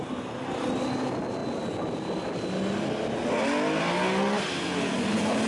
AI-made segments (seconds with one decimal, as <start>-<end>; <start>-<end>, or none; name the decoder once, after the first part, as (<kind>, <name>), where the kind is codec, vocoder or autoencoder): none